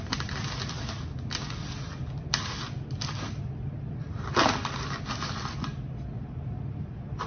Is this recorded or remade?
recorded